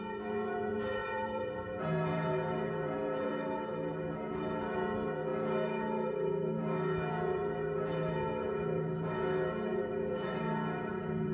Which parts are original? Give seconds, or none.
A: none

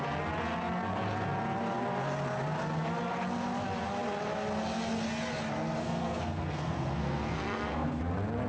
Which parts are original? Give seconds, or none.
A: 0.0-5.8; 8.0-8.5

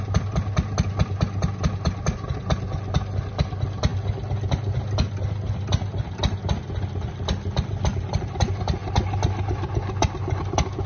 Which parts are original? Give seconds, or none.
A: 0.0-10.9

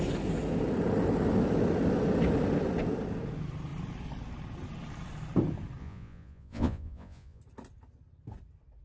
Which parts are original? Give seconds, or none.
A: 0.0-5.8; 7.4-8.8

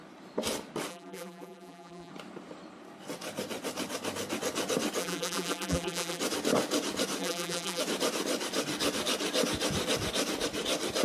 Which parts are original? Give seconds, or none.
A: 0.0-0.9; 2.1-5.0; 6.2-7.2; 7.8-11.0